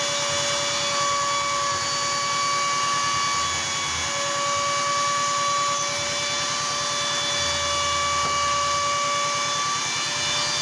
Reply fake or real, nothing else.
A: real